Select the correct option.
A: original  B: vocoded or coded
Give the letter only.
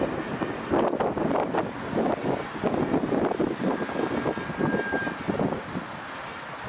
A